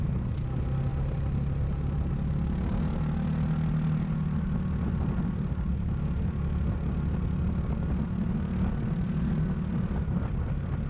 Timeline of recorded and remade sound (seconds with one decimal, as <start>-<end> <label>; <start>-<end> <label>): 0.0-10.9 recorded